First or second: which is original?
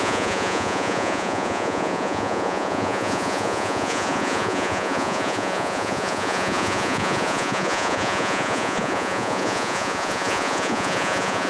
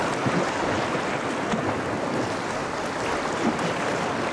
second